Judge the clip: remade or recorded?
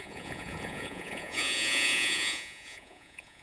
remade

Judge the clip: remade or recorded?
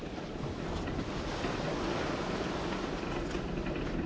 recorded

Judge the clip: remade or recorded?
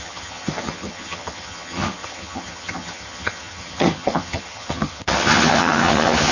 remade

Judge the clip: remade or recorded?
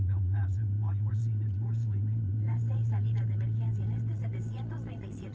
remade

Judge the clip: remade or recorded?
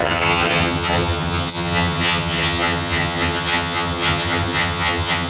remade